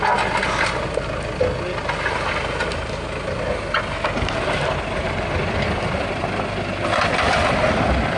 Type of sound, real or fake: real